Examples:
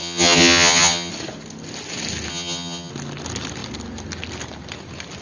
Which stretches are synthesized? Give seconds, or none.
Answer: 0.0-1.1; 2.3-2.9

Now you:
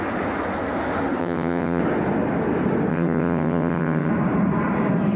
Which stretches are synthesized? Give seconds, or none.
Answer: 1.2-1.8; 2.9-4.1

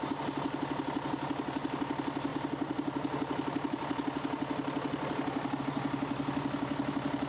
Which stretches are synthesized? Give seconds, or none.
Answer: none